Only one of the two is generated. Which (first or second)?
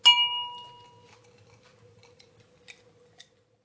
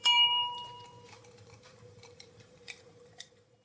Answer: second